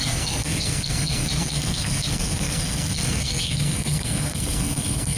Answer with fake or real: fake